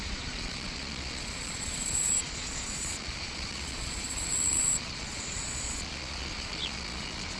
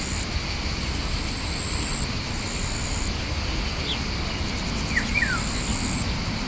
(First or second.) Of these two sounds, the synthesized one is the first